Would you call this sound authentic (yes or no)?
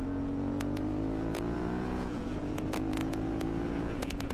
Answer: no